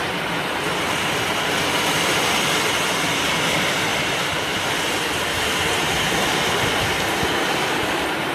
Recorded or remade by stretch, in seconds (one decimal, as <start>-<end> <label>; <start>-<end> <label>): 0.0-8.3 recorded